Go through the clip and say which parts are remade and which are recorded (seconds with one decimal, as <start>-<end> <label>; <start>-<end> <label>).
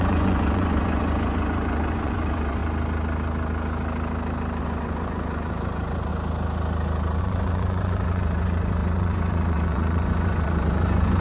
0.0-2.6 remade; 2.6-4.6 recorded; 4.6-6.1 remade; 6.1-7.2 recorded; 7.2-11.2 remade